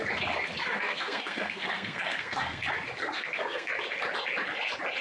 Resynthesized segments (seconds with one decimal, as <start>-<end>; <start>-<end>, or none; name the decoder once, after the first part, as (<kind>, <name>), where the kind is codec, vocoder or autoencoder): 0.6-2.6 (codec, SNAC); 3.0-3.7